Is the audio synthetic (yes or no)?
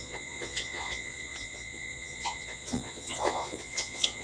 yes